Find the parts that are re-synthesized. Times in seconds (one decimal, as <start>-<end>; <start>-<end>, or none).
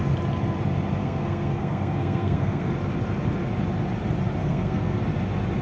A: 1.0-2.7; 4.4-5.0